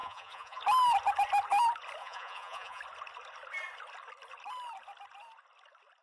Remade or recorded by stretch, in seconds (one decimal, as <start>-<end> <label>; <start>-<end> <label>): 0.0-0.6 remade; 0.6-2.0 recorded; 2.0-2.8 remade; 2.8-6.0 recorded